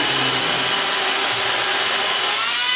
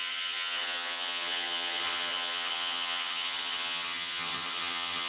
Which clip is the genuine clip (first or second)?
first